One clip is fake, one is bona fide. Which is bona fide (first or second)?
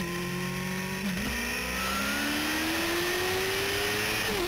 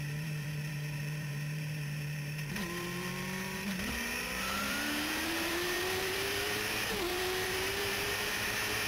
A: first